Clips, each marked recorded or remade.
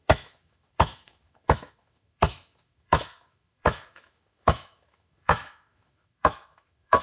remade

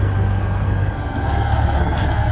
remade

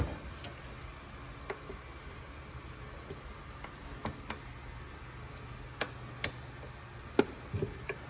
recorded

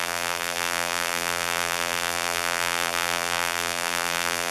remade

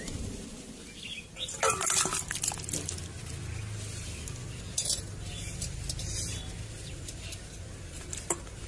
recorded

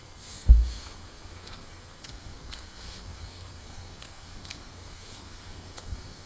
remade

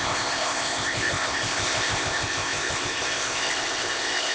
remade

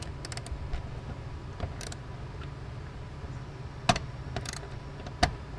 recorded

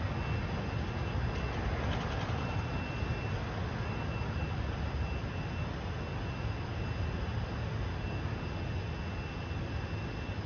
recorded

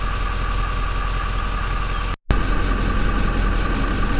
recorded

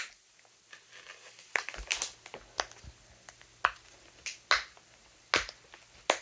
recorded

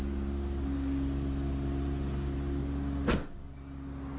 recorded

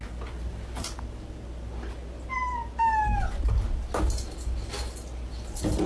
recorded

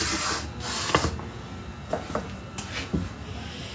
recorded